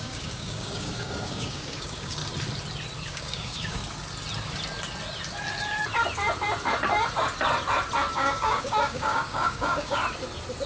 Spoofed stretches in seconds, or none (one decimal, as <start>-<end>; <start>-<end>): 0.0-2.2; 3.1-3.8; 8.1-10.0